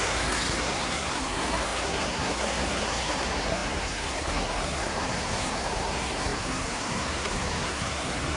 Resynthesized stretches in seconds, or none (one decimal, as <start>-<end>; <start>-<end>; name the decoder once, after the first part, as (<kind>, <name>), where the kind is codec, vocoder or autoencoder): 0.0-8.4 (codec, SNAC)